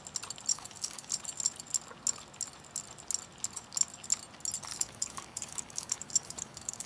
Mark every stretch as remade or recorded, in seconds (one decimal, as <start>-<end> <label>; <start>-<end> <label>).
0.0-0.5 recorded; 0.5-1.1 remade; 1.1-4.7 recorded; 4.7-6.9 remade